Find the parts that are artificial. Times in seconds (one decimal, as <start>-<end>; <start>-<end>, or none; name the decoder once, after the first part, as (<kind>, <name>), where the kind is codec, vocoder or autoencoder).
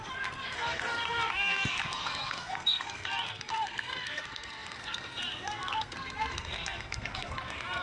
0.0-7.8 (codec, SNAC)